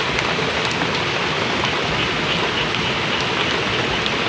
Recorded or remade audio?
recorded